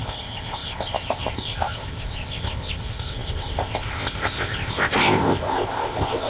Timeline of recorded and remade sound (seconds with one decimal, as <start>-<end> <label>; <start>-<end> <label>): 0.0-6.3 remade